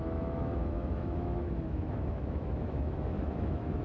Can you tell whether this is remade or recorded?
remade